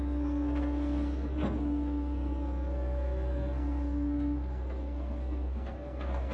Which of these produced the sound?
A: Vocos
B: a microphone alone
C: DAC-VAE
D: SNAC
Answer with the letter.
D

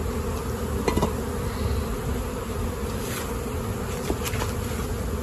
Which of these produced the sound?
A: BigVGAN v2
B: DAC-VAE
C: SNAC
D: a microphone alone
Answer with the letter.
D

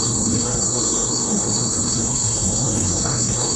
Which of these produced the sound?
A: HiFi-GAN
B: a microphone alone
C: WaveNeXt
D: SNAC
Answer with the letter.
D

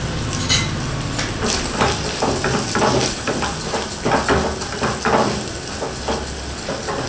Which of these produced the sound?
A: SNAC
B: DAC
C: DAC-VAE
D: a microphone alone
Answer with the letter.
D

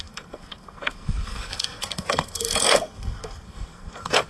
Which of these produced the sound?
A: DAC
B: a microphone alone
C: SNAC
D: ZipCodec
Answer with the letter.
C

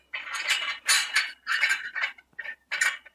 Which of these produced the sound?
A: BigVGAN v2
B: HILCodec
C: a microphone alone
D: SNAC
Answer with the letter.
C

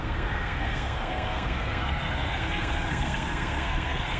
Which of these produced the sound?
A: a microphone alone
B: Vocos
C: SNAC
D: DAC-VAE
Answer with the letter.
C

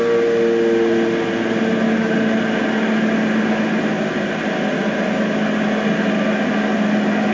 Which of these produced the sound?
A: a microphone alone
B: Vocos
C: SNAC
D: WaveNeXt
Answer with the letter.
A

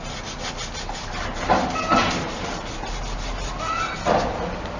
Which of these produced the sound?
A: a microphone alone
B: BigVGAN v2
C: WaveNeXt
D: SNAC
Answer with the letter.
A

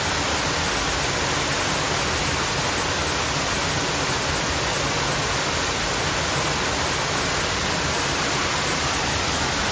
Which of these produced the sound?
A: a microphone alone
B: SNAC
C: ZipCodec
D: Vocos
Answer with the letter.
A